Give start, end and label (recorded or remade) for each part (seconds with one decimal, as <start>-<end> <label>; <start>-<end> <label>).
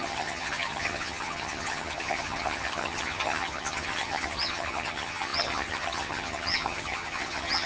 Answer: 0.0-7.7 remade